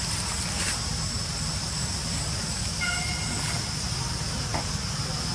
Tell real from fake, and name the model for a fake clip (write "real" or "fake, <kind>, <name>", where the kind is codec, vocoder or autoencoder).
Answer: real